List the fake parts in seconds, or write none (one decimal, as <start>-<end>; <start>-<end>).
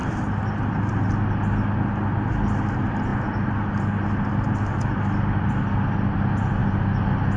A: 0.0-0.7